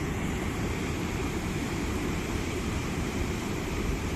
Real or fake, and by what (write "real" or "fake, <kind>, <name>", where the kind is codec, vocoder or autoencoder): fake, vocoder, BigVGAN v2